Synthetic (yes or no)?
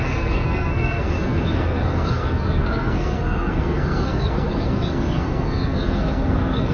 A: yes